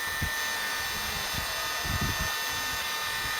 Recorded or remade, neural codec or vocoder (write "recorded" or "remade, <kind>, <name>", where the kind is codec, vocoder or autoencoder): recorded